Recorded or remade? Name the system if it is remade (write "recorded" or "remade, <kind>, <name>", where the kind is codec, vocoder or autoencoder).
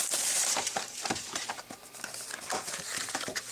remade, vocoder, BigVGAN v2